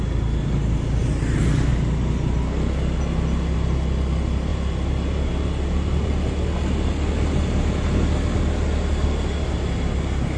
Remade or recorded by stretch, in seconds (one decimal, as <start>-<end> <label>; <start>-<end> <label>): 0.0-10.4 recorded